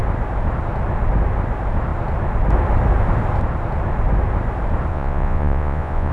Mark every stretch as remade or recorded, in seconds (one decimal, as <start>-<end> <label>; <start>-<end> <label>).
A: 0.0-4.9 recorded; 4.9-6.1 remade